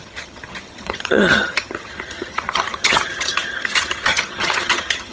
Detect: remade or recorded remade